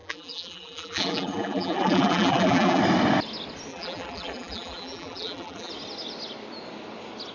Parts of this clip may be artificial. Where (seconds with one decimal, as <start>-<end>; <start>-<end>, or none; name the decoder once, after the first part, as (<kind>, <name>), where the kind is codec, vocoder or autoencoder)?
0.0-2.8 (vocoder, BigVGAN v2); 3.7-5.7